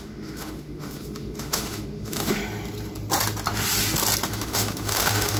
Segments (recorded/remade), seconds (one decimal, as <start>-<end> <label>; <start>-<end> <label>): 0.0-2.4 remade; 2.4-4.3 recorded; 4.3-5.4 remade